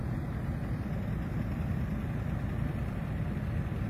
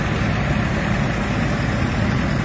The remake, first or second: first